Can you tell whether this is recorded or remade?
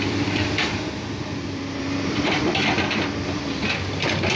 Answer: remade